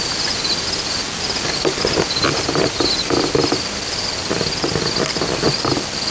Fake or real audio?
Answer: real